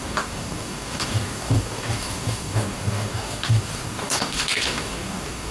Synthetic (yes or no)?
yes